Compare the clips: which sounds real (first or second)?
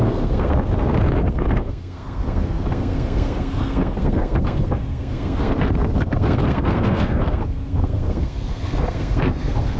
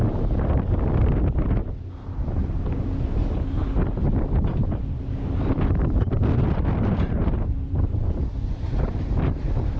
second